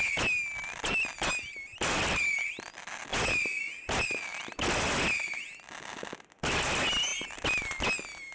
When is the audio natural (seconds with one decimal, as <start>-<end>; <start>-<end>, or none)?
0.0-8.3